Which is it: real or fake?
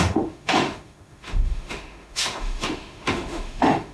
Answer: fake